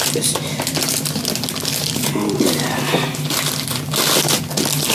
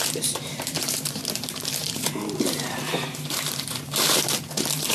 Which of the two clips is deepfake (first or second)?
second